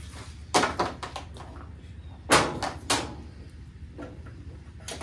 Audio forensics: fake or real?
real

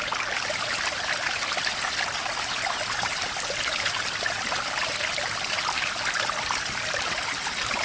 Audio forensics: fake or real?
real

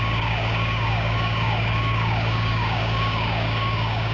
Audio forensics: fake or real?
fake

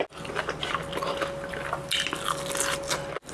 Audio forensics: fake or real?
real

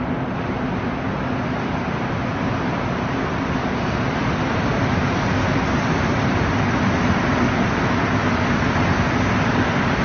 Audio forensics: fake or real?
real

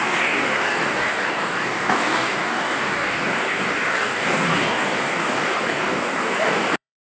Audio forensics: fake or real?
fake